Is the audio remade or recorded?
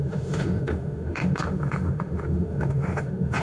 remade